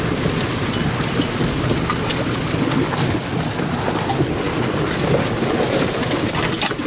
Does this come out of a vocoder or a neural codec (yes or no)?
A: no